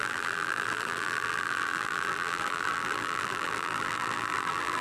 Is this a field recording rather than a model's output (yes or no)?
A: no